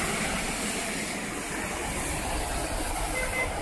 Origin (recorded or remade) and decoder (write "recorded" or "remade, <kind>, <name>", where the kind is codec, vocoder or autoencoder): recorded